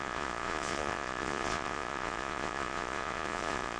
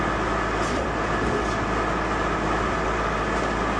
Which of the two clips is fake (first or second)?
first